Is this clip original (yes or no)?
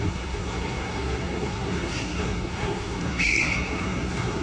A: no